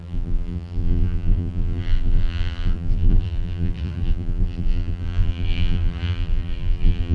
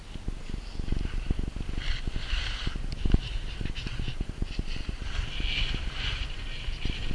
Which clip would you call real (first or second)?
second